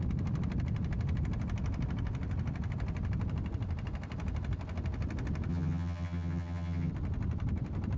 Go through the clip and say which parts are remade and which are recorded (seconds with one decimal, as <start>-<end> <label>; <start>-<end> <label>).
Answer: 0.0-5.5 recorded; 5.5-6.9 remade; 6.9-8.0 recorded